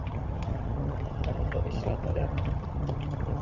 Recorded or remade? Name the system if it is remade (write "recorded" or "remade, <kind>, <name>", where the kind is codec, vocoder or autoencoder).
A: remade, vocoder, HiFi-GAN